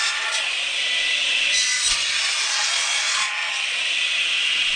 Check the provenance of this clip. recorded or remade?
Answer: remade